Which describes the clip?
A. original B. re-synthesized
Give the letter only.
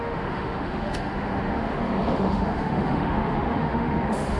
B